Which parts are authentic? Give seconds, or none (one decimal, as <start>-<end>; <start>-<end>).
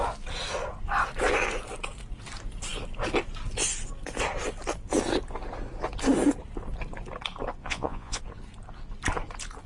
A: 0.0-7.6; 8.2-9.7